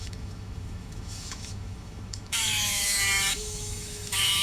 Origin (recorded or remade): remade